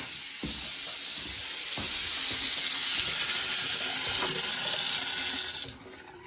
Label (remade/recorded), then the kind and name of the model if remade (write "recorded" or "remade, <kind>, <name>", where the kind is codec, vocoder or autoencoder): recorded